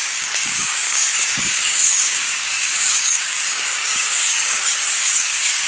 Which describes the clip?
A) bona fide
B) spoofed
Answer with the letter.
B